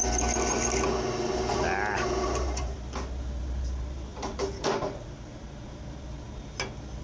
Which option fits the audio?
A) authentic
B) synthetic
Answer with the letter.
A